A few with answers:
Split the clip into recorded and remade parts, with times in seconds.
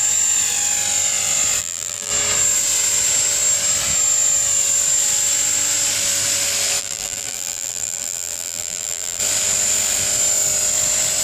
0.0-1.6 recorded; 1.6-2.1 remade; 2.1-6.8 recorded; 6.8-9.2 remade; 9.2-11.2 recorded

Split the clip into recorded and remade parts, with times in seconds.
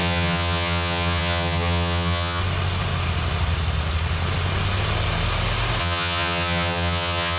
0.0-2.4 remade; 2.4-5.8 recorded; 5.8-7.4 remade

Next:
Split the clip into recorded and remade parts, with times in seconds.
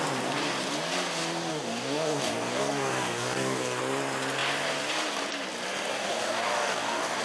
0.0-1.5 recorded; 1.5-3.8 remade; 3.8-5.9 recorded; 5.9-7.2 remade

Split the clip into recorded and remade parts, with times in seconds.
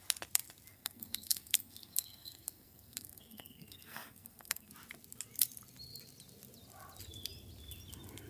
0.0-0.7 recorded; 0.7-4.7 remade; 4.7-8.3 recorded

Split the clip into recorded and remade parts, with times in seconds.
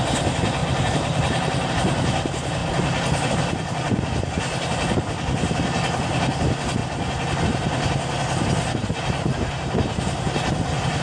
0.0-0.6 recorded; 0.6-1.7 remade; 1.7-11.0 recorded